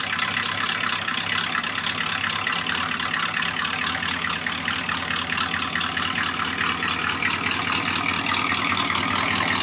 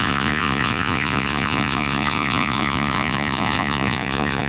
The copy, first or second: second